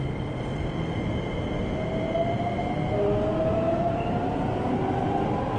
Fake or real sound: real